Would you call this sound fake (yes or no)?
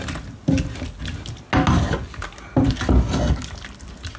no